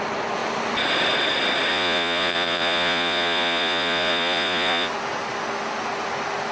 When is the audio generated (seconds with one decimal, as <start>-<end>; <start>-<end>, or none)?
1.7-4.9